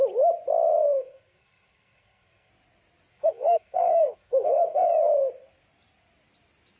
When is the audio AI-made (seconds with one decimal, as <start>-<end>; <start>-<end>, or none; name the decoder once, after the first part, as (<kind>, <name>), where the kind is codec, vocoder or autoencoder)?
0.8-2.5 (codec, SNAC); 3.1-4.9